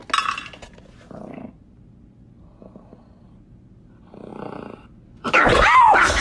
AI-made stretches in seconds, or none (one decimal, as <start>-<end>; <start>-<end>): none